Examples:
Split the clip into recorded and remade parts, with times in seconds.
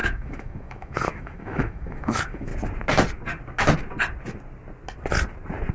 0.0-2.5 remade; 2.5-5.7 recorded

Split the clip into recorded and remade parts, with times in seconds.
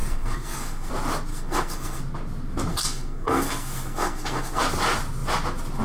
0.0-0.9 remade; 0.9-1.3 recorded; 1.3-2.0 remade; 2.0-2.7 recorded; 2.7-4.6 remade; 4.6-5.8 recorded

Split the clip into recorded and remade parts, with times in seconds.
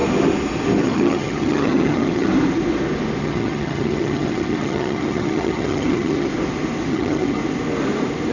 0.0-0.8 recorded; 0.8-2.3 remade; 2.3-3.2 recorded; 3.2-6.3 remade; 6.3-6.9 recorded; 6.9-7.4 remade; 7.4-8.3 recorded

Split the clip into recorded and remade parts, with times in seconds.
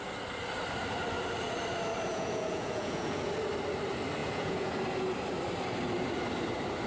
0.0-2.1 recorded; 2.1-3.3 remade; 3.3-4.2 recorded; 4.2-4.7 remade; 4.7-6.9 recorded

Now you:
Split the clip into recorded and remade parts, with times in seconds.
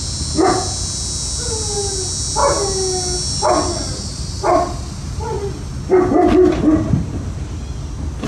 0.0-8.3 recorded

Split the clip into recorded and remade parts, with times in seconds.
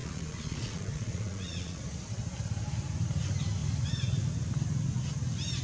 0.0-1.8 remade; 1.8-5.6 recorded